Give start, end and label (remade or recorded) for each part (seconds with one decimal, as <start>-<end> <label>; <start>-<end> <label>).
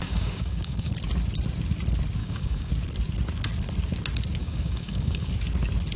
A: 0.0-0.9 remade; 0.9-2.2 recorded; 2.2-2.7 remade; 2.7-4.4 recorded; 4.4-5.3 remade; 5.3-6.0 recorded